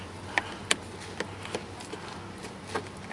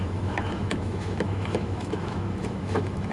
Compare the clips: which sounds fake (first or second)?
second